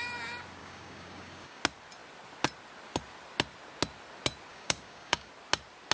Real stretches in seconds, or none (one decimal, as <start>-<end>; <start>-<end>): 0.0-0.6; 1.6-4.5; 5.3-5.9